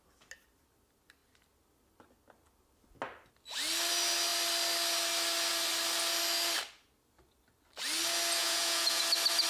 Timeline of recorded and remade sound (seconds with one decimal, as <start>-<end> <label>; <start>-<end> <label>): 0.0-8.4 recorded; 8.4-9.0 remade; 9.0-9.5 recorded